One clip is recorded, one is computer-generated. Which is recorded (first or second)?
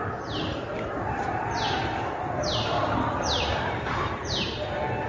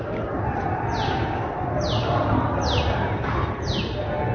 second